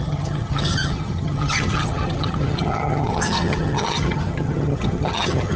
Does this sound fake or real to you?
fake